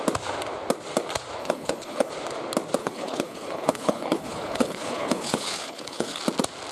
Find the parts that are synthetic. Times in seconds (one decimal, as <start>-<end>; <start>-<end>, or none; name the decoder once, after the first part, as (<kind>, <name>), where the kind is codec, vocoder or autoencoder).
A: 1.4-2.1 (codec, HILCodec); 2.8-6.2